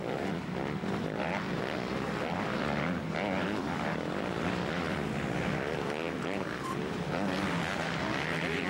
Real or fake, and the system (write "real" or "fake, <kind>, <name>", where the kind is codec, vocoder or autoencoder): real